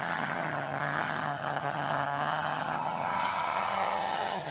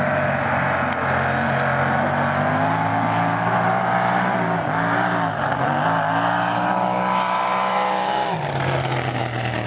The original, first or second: second